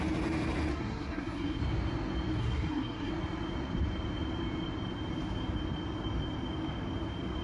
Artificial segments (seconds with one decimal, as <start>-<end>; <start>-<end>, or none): 0.7-1.6; 2.4-3.1